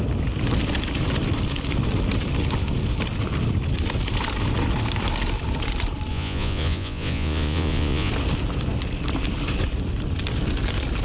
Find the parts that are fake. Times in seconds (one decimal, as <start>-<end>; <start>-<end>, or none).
6.1-8.1

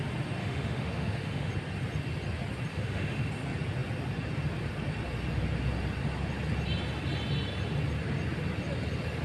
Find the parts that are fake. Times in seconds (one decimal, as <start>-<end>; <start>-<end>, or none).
0.4-1.5; 2.7-3.3